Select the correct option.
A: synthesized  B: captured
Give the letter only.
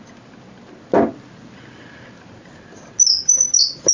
B